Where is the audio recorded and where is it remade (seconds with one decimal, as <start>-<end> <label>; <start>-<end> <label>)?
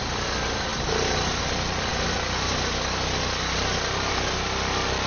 0.0-5.1 recorded